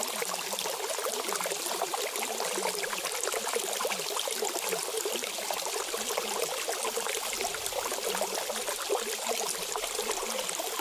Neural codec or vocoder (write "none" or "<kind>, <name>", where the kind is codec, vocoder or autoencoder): none